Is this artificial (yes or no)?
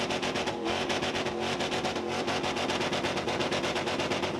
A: no